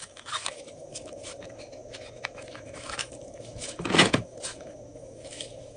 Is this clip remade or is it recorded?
remade